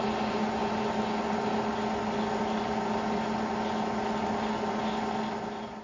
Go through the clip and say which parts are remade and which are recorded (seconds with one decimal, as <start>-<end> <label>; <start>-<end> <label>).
0.0-5.8 recorded